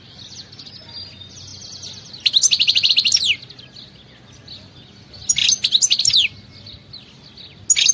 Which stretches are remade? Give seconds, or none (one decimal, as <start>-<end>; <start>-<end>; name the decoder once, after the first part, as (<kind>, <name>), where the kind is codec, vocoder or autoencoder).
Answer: none